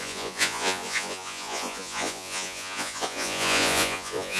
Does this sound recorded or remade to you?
remade